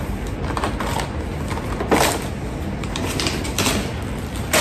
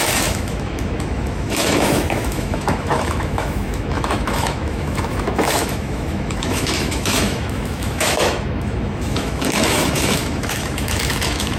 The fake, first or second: second